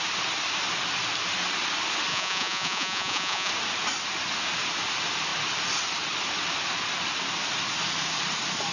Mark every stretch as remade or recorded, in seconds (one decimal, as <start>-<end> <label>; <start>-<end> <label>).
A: 0.0-2.1 recorded; 2.1-3.5 remade; 3.5-8.7 recorded